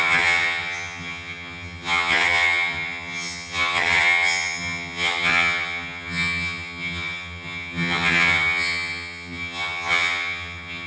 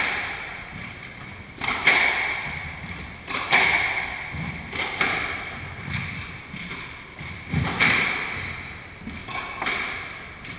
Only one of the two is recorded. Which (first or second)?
second